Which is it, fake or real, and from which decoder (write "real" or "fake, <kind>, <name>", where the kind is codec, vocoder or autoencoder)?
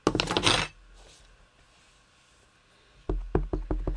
real